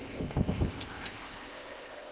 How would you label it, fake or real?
fake